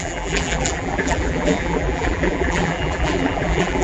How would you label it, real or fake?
fake